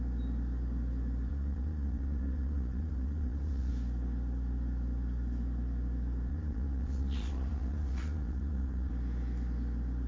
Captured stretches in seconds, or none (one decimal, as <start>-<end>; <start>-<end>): 0.0-1.3; 3.7-6.3; 8.9-10.1